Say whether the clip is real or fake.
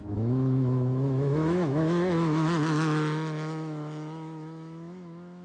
fake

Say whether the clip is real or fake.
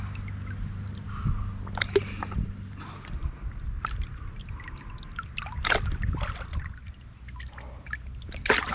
real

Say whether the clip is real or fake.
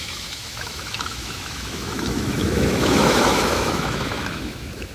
fake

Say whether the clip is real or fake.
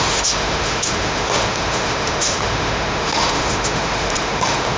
fake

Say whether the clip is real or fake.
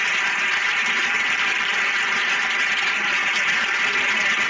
real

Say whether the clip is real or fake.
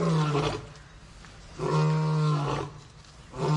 real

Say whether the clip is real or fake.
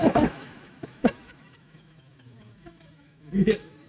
fake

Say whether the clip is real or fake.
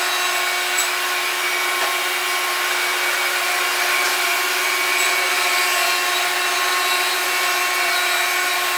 real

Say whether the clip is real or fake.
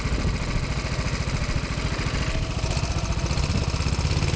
real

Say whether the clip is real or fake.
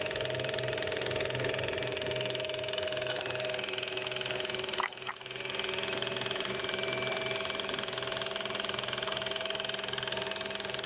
fake